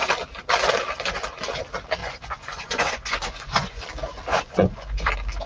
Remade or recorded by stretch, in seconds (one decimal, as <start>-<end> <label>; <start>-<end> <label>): 0.0-2.0 recorded; 2.0-3.8 remade; 3.8-4.3 recorded; 4.3-5.1 remade; 5.1-5.5 recorded